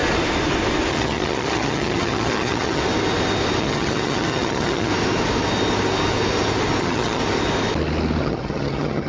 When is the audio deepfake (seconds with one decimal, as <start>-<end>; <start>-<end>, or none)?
0.9-2.8; 3.6-4.9; 6.8-7.2; 8.2-9.1